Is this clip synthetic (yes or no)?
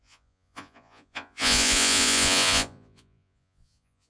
yes